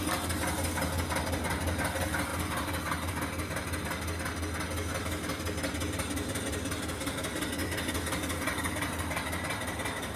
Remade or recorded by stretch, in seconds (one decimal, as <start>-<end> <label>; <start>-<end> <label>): 0.0-7.6 recorded; 7.6-9.2 remade; 9.2-10.2 recorded

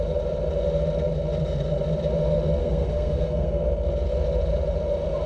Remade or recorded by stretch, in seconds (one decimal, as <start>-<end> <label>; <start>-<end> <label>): 0.0-2.6 recorded; 2.6-3.6 remade; 3.6-5.3 recorded

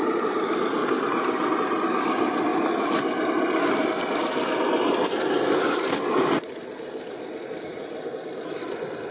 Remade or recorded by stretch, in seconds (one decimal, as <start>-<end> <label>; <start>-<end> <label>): 0.0-2.5 remade; 2.5-6.1 recorded; 6.1-9.1 remade

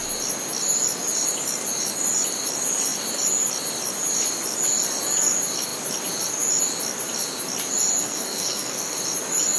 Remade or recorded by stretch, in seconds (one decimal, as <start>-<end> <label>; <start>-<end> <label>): 0.0-8.0 recorded; 8.0-9.0 remade; 9.0-9.6 recorded